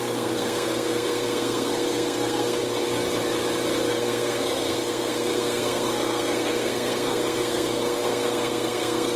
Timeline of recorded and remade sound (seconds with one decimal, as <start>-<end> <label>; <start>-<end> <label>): 0.0-2.6 remade; 2.6-3.9 recorded; 3.9-9.2 remade